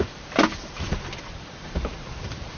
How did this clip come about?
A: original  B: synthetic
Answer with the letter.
B